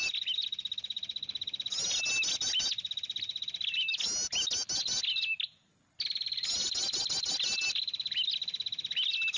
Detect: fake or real real